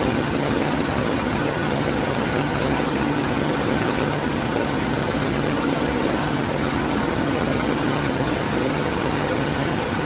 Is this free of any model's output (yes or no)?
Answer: no